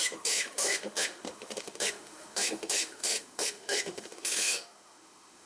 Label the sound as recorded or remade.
remade